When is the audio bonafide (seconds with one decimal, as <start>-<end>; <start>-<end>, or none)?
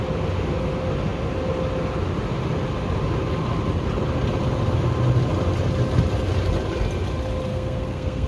0.0-7.5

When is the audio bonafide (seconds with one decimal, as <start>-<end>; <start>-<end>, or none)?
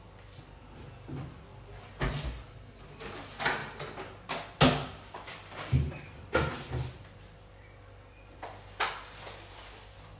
0.0-10.2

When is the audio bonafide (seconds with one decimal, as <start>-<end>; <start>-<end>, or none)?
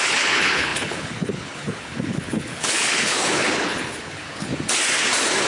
4.5-5.5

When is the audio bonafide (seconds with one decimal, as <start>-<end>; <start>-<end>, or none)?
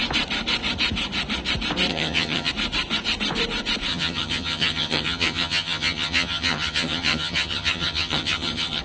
0.0-1.9; 2.5-3.9